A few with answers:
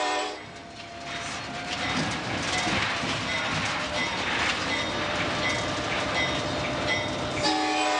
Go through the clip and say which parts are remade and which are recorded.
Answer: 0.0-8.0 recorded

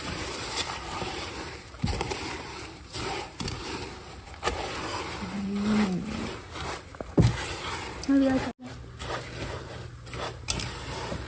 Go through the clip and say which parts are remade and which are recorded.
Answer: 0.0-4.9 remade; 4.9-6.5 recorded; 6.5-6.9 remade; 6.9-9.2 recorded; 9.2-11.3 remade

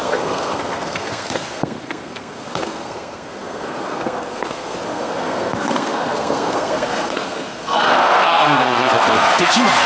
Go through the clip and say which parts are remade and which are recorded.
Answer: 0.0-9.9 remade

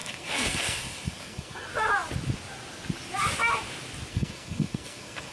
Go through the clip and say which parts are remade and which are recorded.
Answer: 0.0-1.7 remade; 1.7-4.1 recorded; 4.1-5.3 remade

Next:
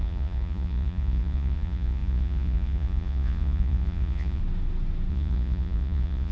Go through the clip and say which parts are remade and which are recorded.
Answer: 0.0-4.4 remade; 4.4-5.1 recorded; 5.1-6.3 remade

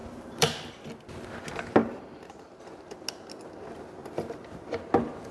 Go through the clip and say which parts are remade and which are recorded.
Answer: 0.0-0.9 remade; 0.9-1.8 recorded; 1.8-2.6 remade; 2.6-4.0 recorded; 4.0-4.7 remade; 4.7-5.3 recorded

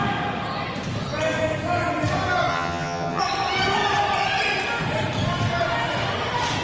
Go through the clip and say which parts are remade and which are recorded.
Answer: 0.0-2.5 recorded; 2.5-3.2 remade; 3.2-6.6 recorded

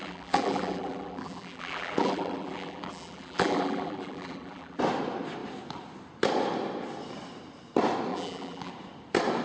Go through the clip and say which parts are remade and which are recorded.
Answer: 0.0-4.8 remade; 4.8-8.1 recorded; 8.1-8.7 remade; 8.7-9.4 recorded